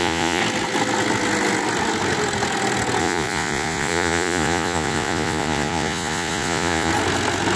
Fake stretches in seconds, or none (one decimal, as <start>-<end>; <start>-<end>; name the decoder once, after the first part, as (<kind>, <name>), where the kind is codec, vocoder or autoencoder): 0.0-0.4 (vocoder, Vocos); 3.0-6.9